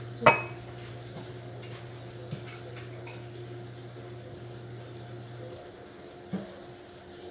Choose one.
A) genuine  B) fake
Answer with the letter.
A